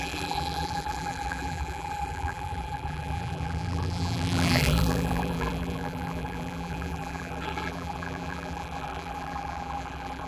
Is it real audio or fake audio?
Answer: fake